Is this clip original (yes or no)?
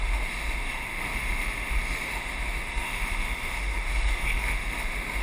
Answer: no